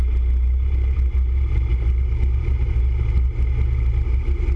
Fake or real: real